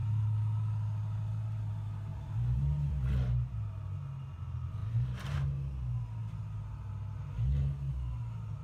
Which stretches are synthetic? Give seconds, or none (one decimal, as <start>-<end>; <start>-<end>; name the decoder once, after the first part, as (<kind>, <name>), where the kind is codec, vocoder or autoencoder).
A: none

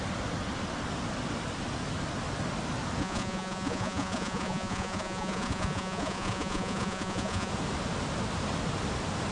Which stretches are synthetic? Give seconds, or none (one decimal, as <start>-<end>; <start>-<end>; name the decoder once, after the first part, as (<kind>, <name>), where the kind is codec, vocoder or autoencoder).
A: 3.0-7.5 (vocoder, Vocos)

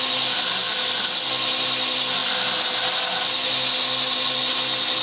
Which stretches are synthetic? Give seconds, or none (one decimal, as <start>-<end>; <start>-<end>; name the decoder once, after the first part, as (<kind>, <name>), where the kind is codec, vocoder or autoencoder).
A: none

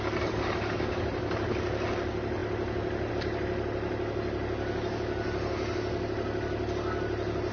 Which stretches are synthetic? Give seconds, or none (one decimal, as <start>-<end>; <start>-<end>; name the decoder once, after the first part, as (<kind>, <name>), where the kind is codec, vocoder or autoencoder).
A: none

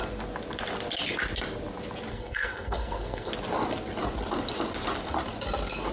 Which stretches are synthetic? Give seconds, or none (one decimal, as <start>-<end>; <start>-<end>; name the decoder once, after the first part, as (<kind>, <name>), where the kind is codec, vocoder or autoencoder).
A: 2.1-3.3 (codec, SNAC)

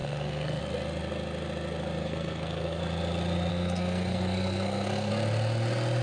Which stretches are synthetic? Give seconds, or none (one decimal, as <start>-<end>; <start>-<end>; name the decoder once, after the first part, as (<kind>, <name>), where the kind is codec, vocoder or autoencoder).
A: 0.0-0.6 (codec, SNAC); 2.0-2.8; 3.5-5.1